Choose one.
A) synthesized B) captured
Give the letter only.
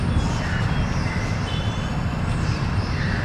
B